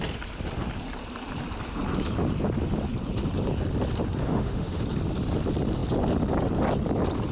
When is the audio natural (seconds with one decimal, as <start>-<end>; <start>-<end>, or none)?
0.0-4.2; 4.8-7.3